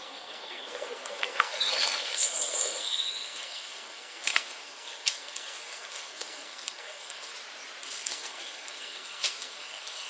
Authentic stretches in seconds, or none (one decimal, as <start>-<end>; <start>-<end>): 7.3-7.8